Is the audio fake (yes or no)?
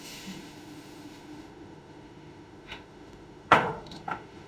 yes